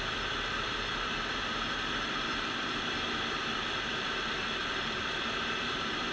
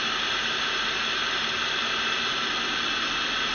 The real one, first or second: second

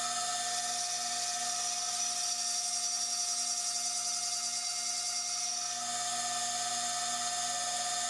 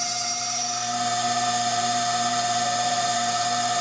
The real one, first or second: first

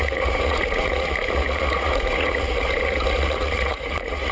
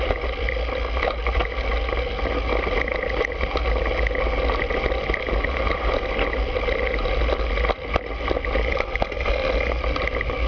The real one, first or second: second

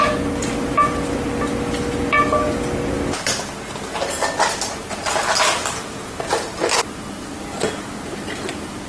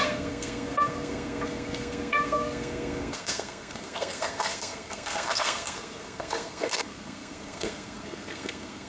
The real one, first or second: first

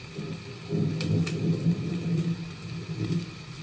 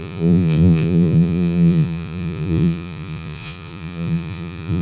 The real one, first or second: first